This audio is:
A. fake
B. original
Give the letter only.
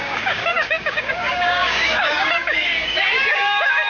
A